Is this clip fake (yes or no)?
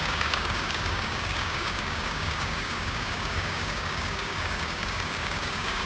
yes